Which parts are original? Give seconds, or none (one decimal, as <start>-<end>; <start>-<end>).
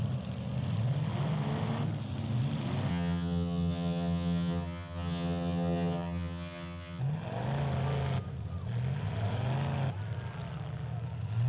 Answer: 0.0-2.9; 7.0-11.5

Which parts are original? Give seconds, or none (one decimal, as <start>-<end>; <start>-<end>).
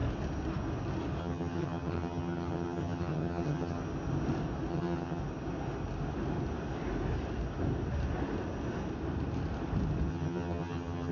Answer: 0.0-1.2; 3.8-4.7; 5.2-10.1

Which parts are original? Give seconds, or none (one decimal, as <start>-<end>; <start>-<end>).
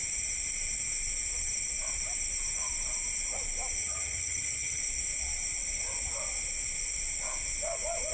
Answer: 0.0-3.8; 4.8-8.1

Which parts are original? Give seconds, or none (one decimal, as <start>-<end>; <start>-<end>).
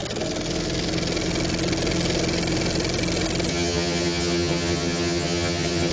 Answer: 0.0-3.5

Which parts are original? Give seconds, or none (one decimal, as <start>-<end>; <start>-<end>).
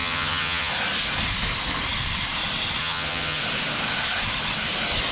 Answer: 0.7-2.8; 3.4-5.1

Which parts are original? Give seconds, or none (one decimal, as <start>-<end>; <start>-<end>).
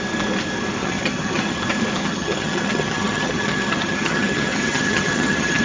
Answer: 0.0-0.8; 1.6-2.0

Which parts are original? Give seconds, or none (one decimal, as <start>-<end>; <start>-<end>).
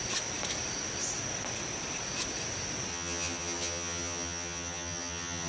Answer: 0.0-2.9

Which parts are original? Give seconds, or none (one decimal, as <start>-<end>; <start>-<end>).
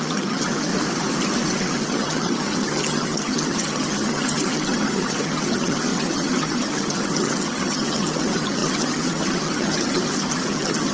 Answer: 0.7-1.5